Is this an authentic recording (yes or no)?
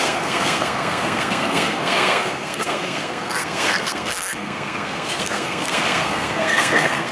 no